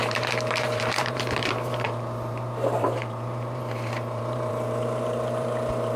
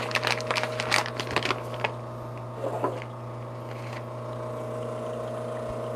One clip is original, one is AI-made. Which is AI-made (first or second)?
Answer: first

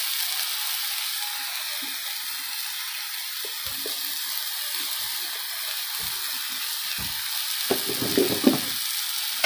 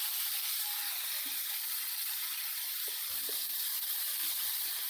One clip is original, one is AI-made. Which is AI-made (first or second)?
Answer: second